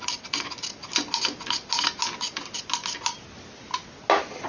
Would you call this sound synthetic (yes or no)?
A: no